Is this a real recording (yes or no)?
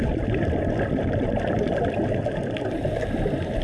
yes